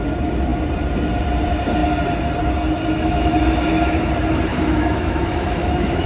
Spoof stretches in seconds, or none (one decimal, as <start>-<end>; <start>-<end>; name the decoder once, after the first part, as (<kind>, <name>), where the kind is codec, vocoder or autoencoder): 2.8-4.1 (autoencoder, DAC-VAE); 4.5-6.1